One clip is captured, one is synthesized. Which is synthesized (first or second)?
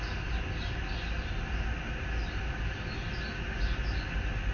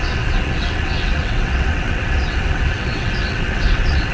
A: second